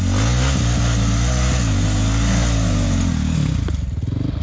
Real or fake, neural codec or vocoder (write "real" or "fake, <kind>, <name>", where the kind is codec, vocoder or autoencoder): real